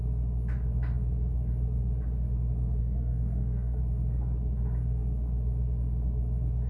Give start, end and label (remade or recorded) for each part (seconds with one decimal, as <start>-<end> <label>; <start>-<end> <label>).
0.0-2.8 recorded; 2.8-3.8 remade; 3.8-6.7 recorded